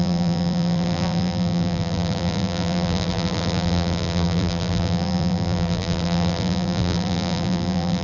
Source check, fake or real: fake